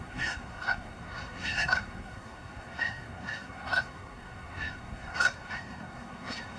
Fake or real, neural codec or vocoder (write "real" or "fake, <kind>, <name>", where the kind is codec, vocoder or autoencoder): fake, codec, SNAC